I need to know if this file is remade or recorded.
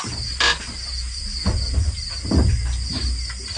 recorded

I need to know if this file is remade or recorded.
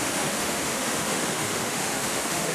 remade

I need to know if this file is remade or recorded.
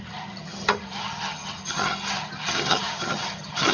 remade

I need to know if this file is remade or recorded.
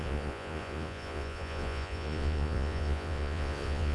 remade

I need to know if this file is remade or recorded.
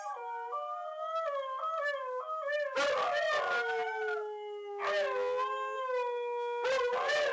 recorded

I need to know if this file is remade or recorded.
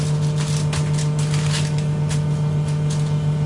recorded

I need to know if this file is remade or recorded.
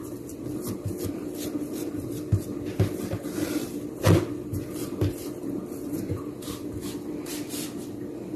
remade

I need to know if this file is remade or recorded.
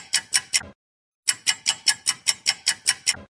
recorded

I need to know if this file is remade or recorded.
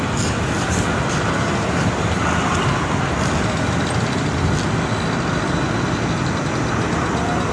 recorded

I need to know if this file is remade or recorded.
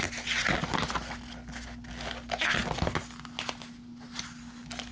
recorded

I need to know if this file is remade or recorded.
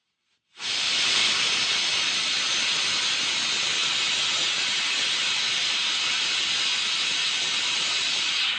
recorded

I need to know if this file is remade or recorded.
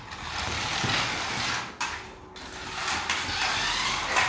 recorded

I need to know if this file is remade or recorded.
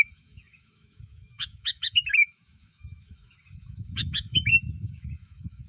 remade